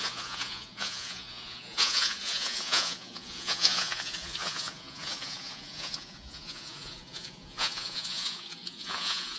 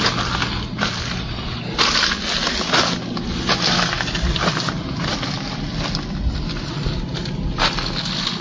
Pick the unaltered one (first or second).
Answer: second